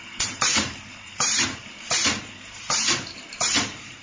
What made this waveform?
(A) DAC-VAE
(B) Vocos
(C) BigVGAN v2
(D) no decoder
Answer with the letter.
C